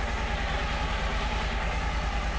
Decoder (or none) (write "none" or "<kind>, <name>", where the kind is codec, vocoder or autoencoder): none